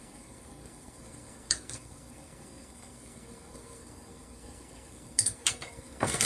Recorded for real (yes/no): no